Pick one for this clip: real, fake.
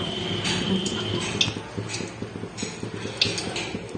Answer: real